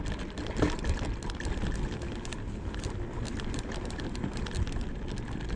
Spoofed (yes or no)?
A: no